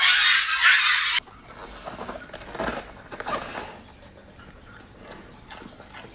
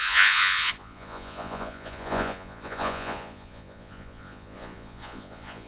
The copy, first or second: second